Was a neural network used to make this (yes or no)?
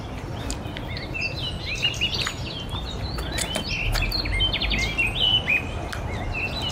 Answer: no